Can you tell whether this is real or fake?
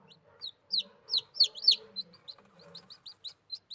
real